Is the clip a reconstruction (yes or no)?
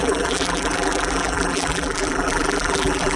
yes